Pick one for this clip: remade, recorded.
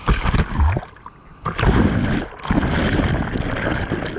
recorded